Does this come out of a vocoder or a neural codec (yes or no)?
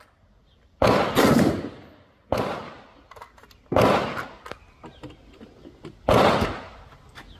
no